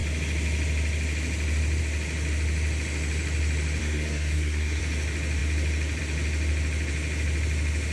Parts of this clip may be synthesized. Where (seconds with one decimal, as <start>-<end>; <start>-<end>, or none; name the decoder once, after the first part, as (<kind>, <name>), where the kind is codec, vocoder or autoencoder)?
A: 3.8-4.8 (codec, SNAC)